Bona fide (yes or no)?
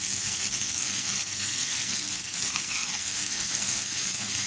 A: no